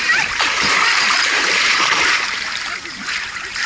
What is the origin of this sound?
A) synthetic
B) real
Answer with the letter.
A